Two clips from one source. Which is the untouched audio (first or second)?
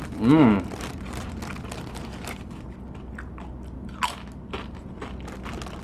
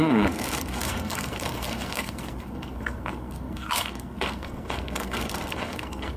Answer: first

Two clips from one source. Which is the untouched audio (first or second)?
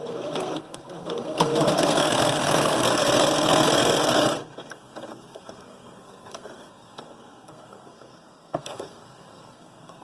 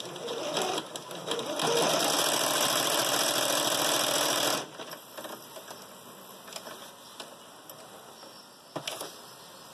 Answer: second